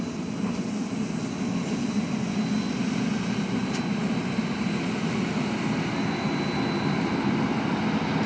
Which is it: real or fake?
real